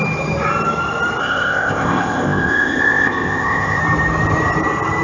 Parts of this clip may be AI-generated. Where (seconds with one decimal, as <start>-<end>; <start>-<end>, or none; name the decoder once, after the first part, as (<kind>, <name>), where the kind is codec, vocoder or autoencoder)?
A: 1.2-3.8 (codec, ZipCodec)